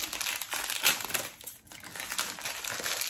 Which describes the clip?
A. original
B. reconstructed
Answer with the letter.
A